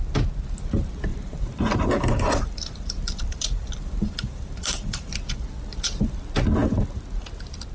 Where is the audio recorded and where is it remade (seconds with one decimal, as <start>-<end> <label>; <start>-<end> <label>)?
0.0-1.1 recorded; 1.1-5.1 remade; 5.1-7.7 recorded